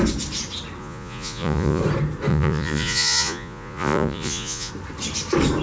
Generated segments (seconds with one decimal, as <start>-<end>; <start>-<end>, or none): 0.8-1.8; 2.3-4.7